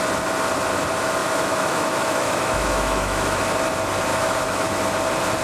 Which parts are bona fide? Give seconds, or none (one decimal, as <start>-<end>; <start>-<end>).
0.0-1.2; 3.4-4.1; 4.8-5.4